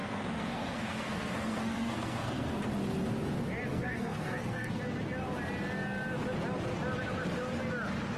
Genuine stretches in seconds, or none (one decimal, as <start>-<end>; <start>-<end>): 2.6-3.7; 4.8-8.2